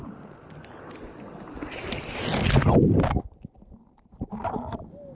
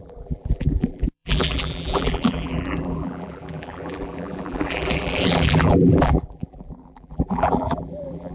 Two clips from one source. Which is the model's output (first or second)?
second